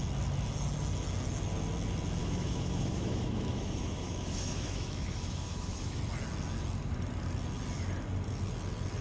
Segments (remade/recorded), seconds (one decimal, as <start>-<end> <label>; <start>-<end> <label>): 0.0-2.2 recorded; 2.2-6.0 remade; 6.0-9.0 recorded